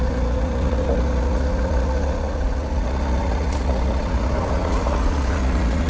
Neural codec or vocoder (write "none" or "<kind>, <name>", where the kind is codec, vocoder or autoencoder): vocoder, Vocos